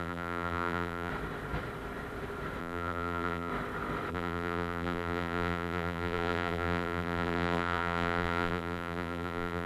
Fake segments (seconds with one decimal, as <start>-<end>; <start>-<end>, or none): 0.0-1.1; 2.6-3.5; 4.1-9.7